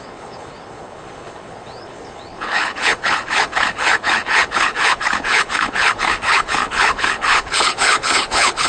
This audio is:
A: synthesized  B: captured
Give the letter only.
A